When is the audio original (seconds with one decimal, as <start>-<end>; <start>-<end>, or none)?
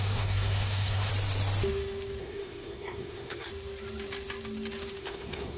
1.1-2.2; 3.5-5.0